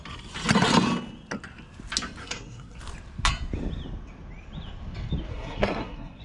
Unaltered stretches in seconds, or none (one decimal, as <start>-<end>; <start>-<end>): 0.0-2.2; 2.8-5.3